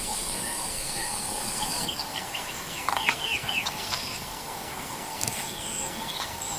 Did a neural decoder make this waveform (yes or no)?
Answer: yes